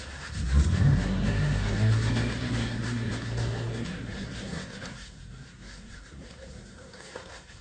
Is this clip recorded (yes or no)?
no